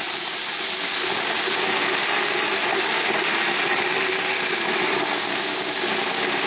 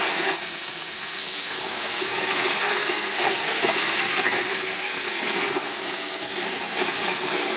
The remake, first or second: second